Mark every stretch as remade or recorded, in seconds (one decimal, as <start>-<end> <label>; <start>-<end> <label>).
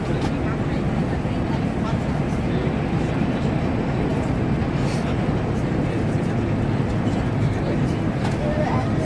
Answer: 0.0-9.0 recorded